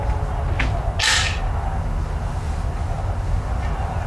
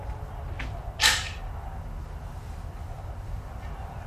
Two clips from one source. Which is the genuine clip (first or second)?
first